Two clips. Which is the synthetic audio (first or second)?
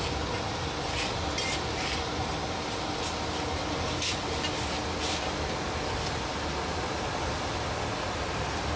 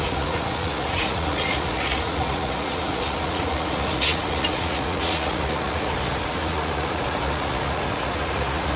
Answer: second